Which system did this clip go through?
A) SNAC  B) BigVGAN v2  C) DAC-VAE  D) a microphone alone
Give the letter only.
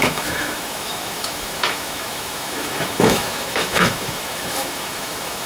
C